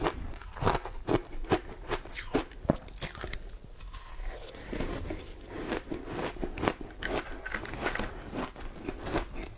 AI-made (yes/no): no